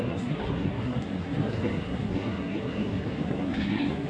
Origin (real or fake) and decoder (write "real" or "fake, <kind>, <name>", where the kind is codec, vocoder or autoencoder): fake, codec, SNAC